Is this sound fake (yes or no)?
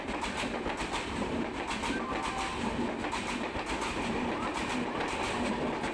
no